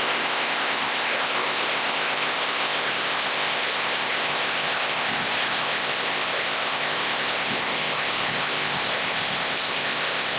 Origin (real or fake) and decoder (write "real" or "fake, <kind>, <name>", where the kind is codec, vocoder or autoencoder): fake, codec, ZipCodec